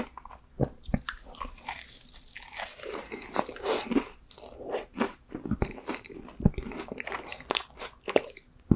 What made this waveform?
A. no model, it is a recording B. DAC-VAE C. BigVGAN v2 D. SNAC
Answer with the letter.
A